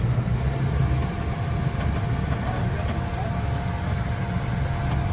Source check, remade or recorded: recorded